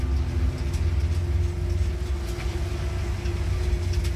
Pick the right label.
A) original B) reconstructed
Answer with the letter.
A